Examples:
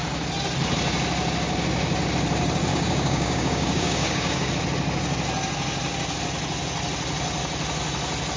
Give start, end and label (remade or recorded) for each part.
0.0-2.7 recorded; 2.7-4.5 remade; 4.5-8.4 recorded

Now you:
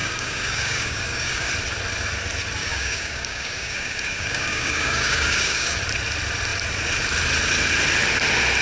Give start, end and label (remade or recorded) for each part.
0.0-1.5 remade; 1.5-2.6 recorded; 2.6-5.8 remade; 5.8-8.6 recorded

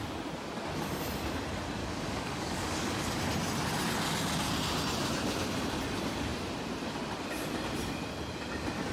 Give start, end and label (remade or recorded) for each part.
0.0-1.8 recorded; 1.8-3.2 remade; 3.2-8.9 recorded

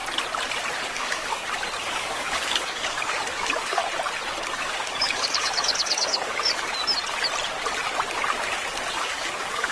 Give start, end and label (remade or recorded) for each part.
0.0-0.9 recorded; 0.9-1.4 remade; 1.4-1.9 recorded; 1.9-3.8 remade; 3.8-4.6 recorded; 4.6-6.7 remade; 6.7-8.9 recorded; 8.9-9.7 remade

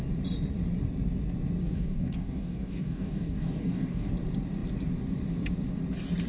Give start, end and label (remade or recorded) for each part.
0.0-1.6 recorded; 1.6-4.1 remade; 4.1-6.3 recorded

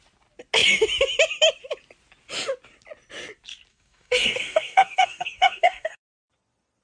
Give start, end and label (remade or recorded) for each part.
0.0-3.7 recorded; 3.7-6.0 remade; 6.0-6.8 recorded